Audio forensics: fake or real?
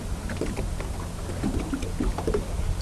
real